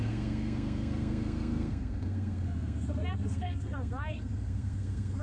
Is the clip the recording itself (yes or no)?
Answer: no